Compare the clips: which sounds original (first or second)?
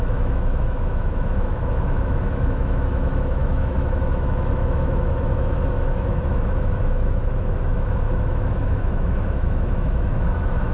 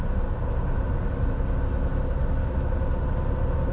second